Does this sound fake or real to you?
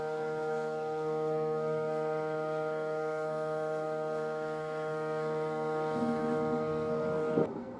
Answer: fake